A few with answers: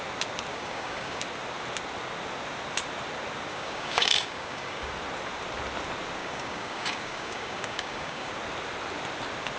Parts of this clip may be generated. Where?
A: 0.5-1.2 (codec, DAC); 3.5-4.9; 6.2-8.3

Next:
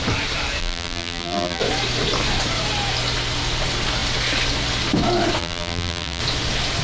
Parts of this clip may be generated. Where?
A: 0.6-1.6 (vocoder, BigVGAN v2); 5.4-6.2

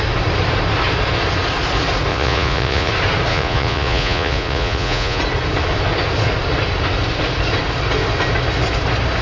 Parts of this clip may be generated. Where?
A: 2.1-2.9 (vocoder, Vocos); 3.3-5.2

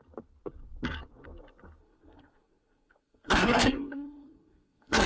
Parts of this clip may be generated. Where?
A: 1.8-5.1 (codec, SNAC)

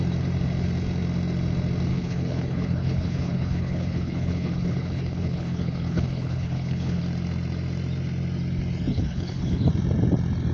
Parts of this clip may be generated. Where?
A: 1.9-7.0 (codec, HILCodec); 8.9-9.7

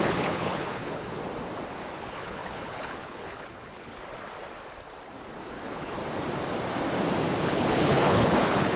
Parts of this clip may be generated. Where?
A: 0.0-1.2 (codec, HILCodec); 2.0-3.9; 5.5-6.0; 7.4-8.8